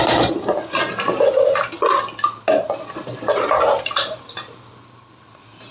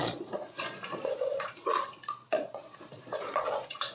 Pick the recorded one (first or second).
first